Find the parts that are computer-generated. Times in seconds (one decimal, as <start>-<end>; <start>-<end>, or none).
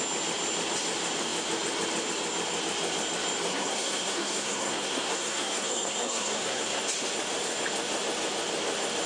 3.5-6.8